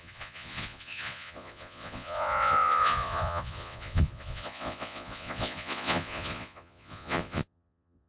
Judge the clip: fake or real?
fake